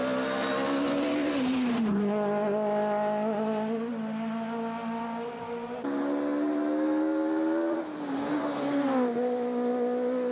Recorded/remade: recorded